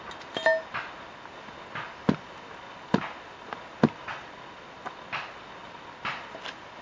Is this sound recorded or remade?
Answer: recorded